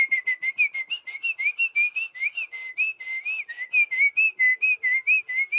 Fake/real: real